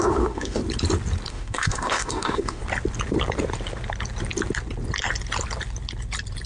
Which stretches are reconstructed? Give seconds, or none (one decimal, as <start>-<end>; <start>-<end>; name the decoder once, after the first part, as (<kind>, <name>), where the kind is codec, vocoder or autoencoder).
0.0-0.6 (autoencoder, DAC-VAE); 1.3-2.6